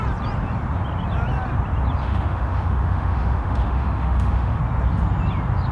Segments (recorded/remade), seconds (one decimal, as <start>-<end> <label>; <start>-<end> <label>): 0.0-2.0 recorded; 2.0-4.6 remade; 4.6-5.7 recorded